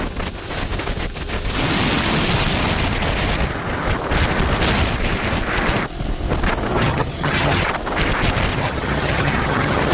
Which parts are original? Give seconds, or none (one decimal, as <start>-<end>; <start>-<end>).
0.0-6.7; 7.7-8.5